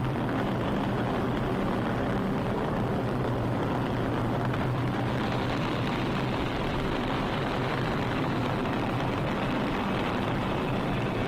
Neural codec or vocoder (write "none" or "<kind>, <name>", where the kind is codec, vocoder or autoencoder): vocoder, BigVGAN v2